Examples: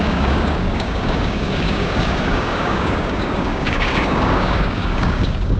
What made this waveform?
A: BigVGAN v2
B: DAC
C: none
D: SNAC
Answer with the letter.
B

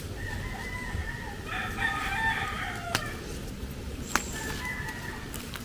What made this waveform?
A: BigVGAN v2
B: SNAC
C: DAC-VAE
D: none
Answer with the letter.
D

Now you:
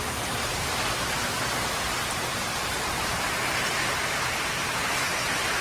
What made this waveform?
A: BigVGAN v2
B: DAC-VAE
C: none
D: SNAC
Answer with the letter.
A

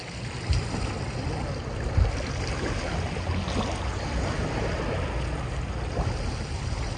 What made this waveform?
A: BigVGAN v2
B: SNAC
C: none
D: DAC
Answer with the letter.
C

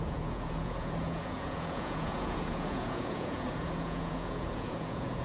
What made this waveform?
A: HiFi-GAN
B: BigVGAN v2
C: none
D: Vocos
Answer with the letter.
D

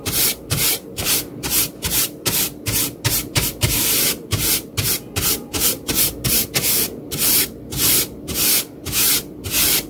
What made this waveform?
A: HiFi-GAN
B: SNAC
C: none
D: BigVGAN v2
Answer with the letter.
D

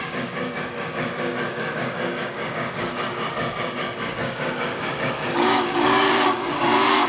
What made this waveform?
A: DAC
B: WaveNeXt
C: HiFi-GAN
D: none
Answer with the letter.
A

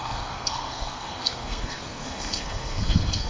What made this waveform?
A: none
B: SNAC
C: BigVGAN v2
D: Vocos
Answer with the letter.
B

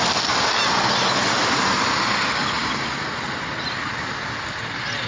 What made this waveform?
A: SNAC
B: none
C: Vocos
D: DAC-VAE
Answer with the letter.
B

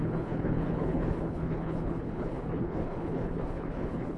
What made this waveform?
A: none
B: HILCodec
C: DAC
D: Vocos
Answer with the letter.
B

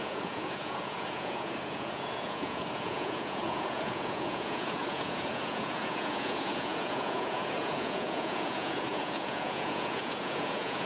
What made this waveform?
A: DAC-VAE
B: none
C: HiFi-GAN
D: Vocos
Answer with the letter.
D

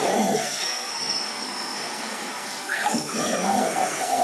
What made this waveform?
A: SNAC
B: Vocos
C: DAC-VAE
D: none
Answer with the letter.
A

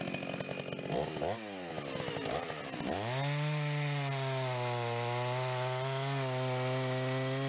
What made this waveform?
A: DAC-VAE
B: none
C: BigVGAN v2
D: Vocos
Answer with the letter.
B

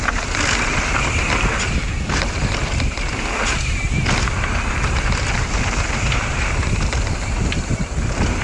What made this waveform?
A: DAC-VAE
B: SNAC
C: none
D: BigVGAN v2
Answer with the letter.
C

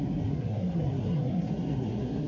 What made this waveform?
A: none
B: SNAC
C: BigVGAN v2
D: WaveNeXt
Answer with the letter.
B